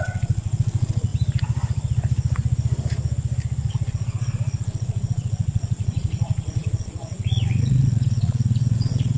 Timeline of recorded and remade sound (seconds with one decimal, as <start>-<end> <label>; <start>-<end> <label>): 0.0-1.1 remade; 1.1-3.7 recorded; 3.7-9.2 remade